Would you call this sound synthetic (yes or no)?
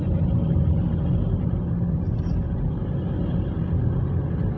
no